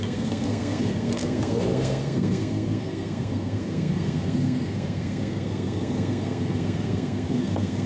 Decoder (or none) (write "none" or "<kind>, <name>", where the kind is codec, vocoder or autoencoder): codec, SNAC